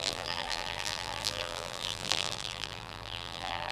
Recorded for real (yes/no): no